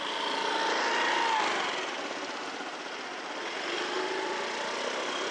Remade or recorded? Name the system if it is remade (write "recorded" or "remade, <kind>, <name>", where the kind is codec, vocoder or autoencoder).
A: recorded